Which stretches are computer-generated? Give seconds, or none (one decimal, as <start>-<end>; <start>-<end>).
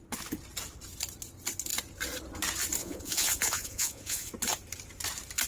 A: 2.8-4.3